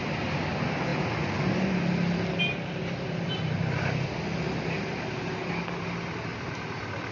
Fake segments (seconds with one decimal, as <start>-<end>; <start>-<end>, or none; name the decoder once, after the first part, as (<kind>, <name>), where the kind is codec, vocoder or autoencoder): none